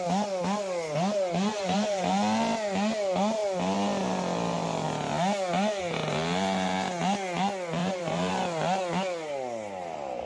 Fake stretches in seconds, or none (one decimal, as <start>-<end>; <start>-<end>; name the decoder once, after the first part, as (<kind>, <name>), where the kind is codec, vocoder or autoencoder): 1.5-2.1 (vocoder, BigVGAN v2); 7.8-8.3